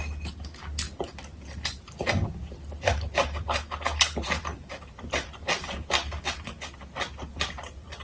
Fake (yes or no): no